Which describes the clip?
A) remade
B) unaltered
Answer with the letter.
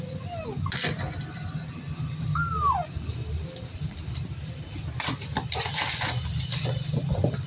B